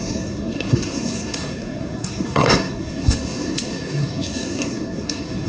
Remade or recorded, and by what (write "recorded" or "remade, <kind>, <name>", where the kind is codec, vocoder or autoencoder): remade, codec, SNAC